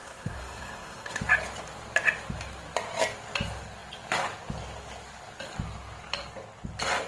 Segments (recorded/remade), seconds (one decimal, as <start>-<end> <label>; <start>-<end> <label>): 0.0-1.2 remade; 1.2-7.1 recorded